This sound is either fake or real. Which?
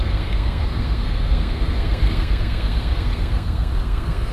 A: fake